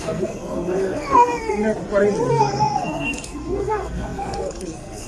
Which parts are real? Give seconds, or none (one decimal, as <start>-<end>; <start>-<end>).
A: 1.6-2.3